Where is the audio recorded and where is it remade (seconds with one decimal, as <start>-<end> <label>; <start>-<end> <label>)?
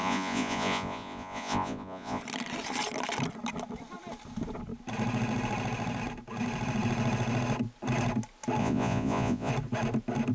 0.0-2.2 remade; 2.2-8.6 recorded; 8.6-9.5 remade; 9.5-10.3 recorded